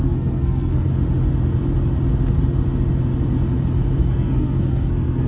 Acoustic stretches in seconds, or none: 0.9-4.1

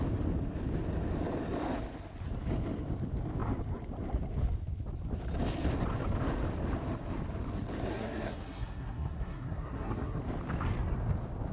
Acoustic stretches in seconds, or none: 0.0-7.9; 10.2-11.5

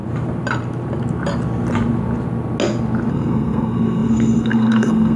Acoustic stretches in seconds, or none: 0.0-3.1

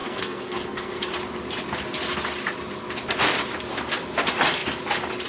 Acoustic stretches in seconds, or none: 1.1-5.3

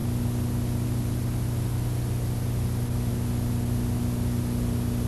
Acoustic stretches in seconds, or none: 0.0-5.1

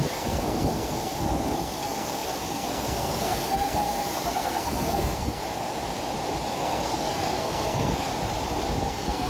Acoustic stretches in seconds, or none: 5.4-6.5; 8.1-8.8

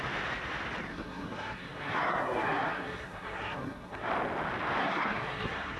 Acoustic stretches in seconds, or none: 0.0-0.9; 4.1-4.8

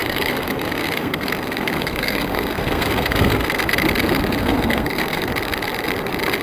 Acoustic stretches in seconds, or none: 3.7-4.4; 5.3-6.4